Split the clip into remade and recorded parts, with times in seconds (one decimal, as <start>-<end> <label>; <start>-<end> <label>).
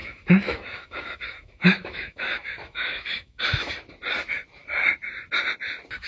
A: 0.0-3.7 remade; 3.7-6.1 recorded